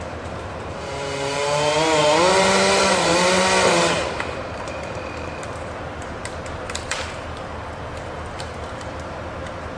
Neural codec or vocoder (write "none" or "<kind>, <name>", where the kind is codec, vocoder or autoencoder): vocoder, BigVGAN v2